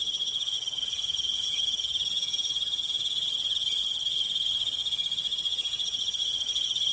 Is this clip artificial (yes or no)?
yes